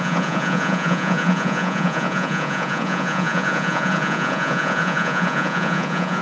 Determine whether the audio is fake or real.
fake